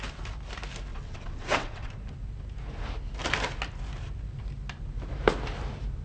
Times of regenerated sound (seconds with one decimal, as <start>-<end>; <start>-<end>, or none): 0.9-1.9